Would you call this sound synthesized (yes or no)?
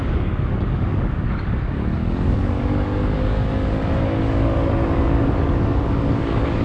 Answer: yes